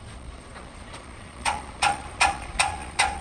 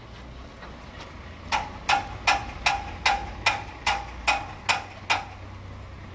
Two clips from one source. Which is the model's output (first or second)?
first